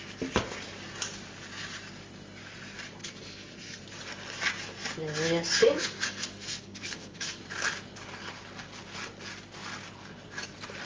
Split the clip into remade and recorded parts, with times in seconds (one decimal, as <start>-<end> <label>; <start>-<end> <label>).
0.0-3.0 recorded; 3.0-3.8 remade; 3.8-5.6 recorded; 5.6-7.4 remade; 7.4-10.9 recorded